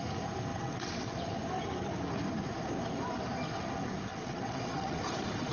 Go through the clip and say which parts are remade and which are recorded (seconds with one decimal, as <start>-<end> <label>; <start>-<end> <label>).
0.0-0.5 recorded; 0.5-1.1 remade; 1.1-4.1 recorded; 4.1-5.0 remade; 5.0-5.5 recorded